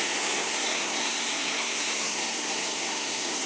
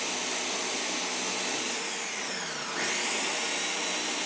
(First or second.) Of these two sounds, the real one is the second